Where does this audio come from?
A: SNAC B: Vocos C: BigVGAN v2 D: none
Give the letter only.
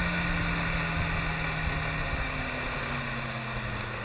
D